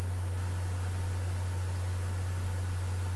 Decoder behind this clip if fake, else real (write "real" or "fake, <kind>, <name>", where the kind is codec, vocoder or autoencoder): real